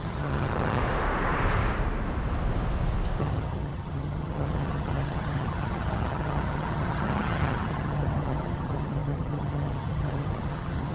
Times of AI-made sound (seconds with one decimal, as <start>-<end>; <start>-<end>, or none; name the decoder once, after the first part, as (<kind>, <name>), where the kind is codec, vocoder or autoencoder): 0.0-0.8 (vocoder, HiFi-GAN); 3.2-10.9